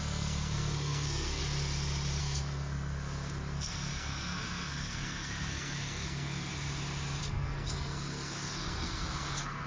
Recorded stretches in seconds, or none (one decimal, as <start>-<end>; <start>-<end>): 1.4-2.2; 6.5-7.2

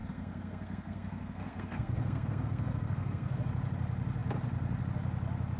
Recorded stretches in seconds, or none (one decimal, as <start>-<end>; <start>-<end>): 3.4-5.6

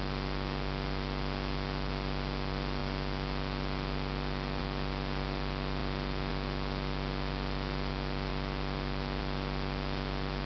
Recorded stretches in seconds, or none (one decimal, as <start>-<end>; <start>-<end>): 0.0-10.5